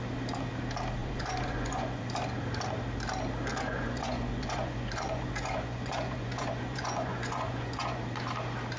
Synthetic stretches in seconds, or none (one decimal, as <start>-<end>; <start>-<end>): 1.0-2.0; 3.5-8.0